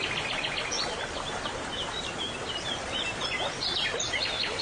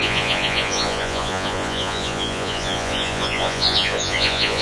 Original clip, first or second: first